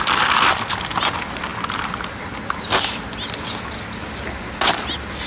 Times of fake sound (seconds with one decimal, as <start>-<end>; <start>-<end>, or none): none